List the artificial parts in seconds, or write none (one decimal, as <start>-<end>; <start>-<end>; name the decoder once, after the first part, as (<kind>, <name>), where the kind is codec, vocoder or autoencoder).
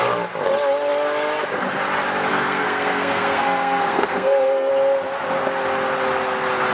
2.3-4.7 (codec, SNAC)